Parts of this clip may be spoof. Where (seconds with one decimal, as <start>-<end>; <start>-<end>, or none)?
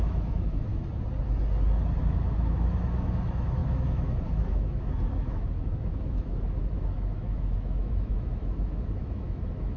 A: 0.0-0.7; 2.0-9.8